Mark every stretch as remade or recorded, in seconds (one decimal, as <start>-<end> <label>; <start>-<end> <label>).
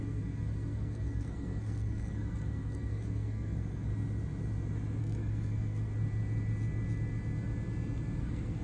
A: 0.0-3.9 remade; 3.9-5.0 recorded; 5.0-5.9 remade; 5.9-8.2 recorded; 8.2-8.6 remade